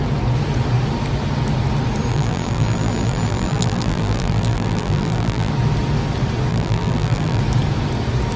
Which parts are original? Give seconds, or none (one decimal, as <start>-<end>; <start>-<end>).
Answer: 0.0-2.1; 5.5-6.5; 7.4-8.4